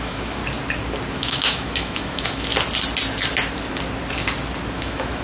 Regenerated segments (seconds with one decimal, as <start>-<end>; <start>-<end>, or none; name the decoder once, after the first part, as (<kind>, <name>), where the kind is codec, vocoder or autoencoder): 0.0-0.4 (autoencoder, DAC-VAE); 1.1-2.5; 4.7-5.2